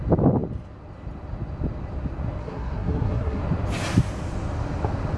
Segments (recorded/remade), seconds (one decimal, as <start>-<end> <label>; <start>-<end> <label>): 0.0-2.4 recorded; 2.4-3.4 remade; 3.4-5.2 recorded